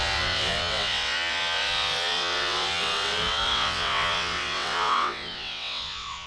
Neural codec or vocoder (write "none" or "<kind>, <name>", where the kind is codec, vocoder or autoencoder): vocoder, WaveNeXt